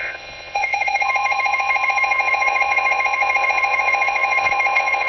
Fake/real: fake